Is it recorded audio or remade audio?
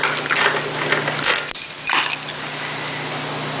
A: recorded